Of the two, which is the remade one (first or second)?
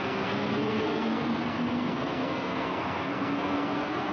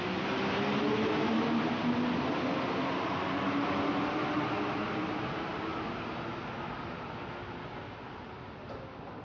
first